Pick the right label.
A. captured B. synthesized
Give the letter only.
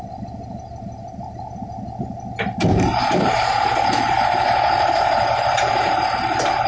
A